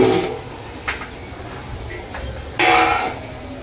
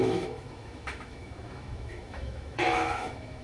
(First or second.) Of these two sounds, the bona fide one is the first